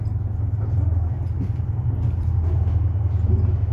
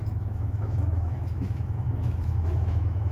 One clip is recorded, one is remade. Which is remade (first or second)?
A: second